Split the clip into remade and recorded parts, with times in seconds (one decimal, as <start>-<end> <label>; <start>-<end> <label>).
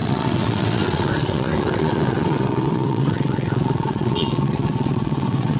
0.0-5.6 remade